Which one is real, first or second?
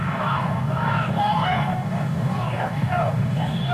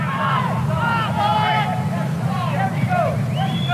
second